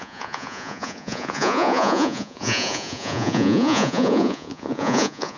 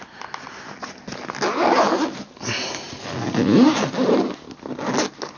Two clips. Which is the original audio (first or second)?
second